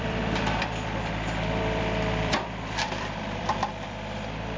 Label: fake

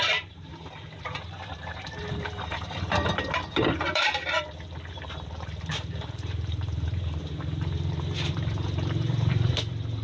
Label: fake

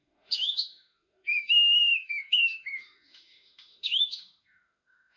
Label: fake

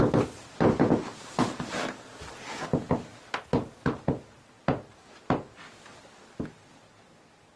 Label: real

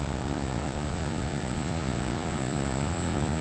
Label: fake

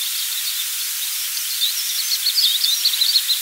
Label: real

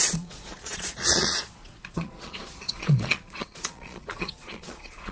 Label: fake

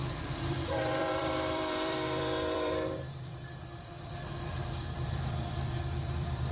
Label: fake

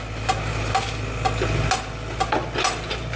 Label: real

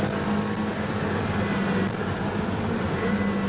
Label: real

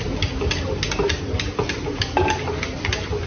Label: real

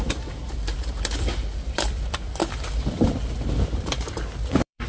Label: fake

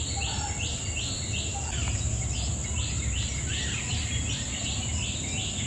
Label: real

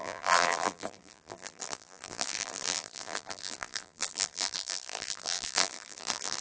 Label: fake